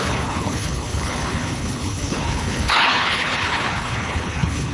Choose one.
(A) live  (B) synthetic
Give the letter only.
B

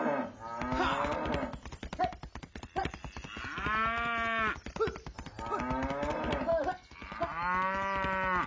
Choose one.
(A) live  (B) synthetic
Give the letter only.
A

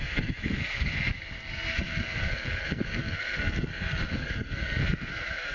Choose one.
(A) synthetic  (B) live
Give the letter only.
A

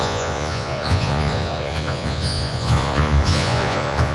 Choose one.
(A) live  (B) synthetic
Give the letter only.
B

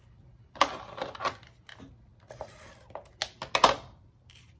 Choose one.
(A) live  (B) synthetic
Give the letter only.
A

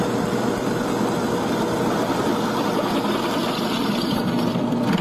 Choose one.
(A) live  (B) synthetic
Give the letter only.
A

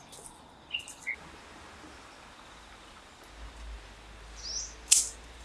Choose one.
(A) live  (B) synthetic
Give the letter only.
A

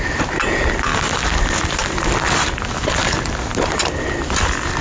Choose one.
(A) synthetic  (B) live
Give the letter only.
B